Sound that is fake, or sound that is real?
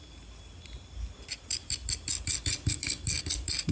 real